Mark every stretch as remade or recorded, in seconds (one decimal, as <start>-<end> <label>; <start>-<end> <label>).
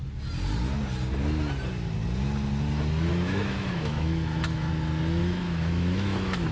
0.0-3.1 recorded; 3.1-4.7 remade; 4.7-5.2 recorded; 5.2-6.5 remade